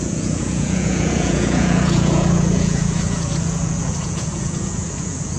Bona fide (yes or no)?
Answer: no